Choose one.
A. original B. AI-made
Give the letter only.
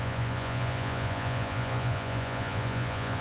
B